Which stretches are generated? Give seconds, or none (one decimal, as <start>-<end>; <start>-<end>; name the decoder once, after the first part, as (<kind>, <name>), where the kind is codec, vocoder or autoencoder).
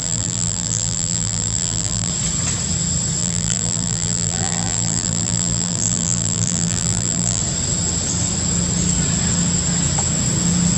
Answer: 0.0-2.1 (vocoder, BigVGAN v2); 3.2-7.4